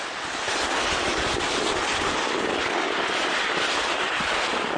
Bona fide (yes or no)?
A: yes